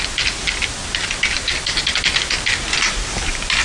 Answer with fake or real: real